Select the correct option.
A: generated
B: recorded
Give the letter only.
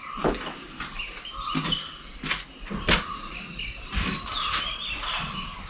B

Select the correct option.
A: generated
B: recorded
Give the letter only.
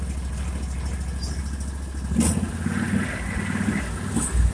B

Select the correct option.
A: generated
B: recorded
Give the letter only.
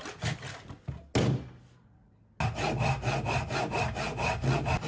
B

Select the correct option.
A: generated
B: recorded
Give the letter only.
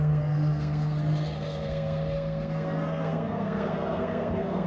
A